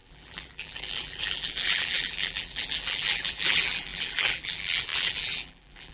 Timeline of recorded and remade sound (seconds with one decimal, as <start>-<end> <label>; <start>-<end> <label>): 0.0-5.9 remade